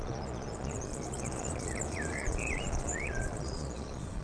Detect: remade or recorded remade